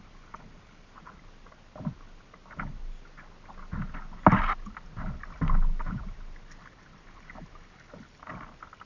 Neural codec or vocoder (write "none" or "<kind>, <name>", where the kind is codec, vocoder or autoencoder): none